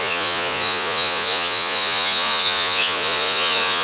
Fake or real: fake